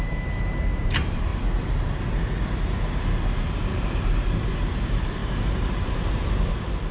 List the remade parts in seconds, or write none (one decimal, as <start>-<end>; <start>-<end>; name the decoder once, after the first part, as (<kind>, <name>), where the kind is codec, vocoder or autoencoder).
0.0-1.3 (vocoder, BigVGAN v2); 3.3-6.9

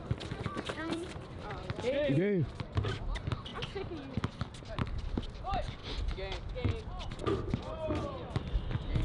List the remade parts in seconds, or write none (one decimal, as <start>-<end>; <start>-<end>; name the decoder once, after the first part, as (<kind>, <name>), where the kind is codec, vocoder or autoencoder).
0.0-3.5 (vocoder, BigVGAN v2); 4.8-5.8; 7.1-9.0

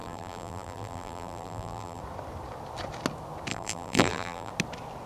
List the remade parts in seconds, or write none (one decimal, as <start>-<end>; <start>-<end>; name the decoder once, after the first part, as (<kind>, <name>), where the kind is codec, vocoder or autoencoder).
0.0-2.0 (vocoder, BigVGAN v2); 3.5-4.5

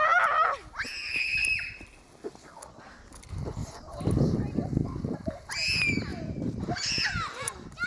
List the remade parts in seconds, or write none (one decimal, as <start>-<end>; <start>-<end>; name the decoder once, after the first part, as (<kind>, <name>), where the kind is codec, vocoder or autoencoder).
3.6-5.5 (vocoder, BigVGAN v2); 6.1-6.9

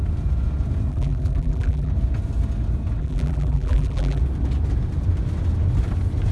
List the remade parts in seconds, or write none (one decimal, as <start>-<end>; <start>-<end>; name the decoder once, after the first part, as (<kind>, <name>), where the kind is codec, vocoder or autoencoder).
0.9-1.9 (vocoder, BigVGAN v2); 3.0-4.2